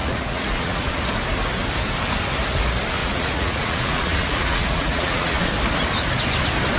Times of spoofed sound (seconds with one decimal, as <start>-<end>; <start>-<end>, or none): 0.0-0.9; 3.0-5.5